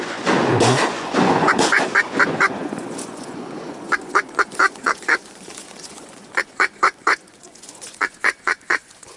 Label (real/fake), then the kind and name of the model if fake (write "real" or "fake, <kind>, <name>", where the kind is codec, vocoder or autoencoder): fake, vocoder, Vocos